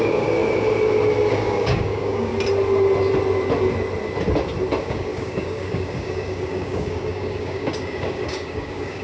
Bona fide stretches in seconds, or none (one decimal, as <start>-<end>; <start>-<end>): 0.4-1.3; 2.3-4.8